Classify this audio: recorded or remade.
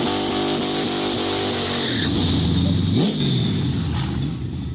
recorded